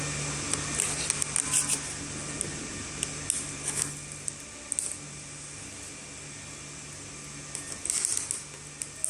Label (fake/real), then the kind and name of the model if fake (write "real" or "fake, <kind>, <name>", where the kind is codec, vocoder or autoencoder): real